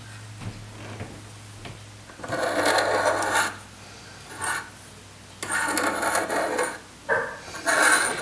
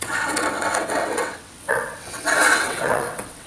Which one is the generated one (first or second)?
second